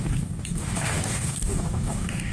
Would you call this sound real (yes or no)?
no